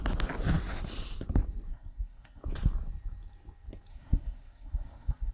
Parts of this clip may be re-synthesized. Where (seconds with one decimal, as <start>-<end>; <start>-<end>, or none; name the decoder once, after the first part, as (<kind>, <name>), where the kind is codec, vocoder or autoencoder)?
1.7-2.4 (codec, SNAC); 3.9-5.3